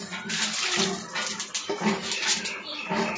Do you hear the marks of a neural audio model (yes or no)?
no